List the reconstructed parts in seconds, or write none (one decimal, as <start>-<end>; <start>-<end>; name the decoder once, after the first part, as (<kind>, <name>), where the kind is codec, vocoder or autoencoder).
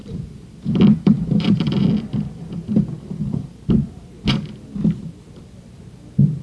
0.0-3.7 (vocoder, BigVGAN v2)